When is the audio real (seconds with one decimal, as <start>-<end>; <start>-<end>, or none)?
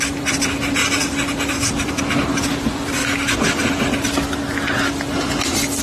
0.8-1.3; 3.0-5.2